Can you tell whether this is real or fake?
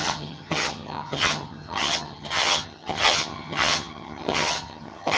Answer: fake